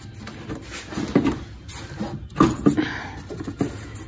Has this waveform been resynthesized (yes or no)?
no